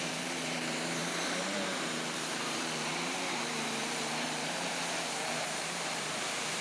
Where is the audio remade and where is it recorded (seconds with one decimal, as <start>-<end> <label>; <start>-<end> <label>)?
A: 0.0-6.6 remade